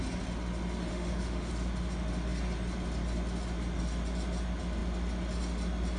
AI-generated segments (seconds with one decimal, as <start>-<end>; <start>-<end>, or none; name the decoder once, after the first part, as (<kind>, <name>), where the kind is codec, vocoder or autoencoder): 0.9-1.5 (autoencoder, DAC-VAE)